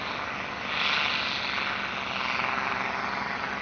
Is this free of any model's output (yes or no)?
yes